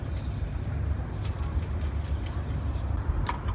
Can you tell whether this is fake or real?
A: real